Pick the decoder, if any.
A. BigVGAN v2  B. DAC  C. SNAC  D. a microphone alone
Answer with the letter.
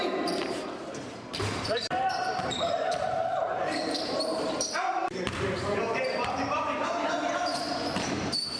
A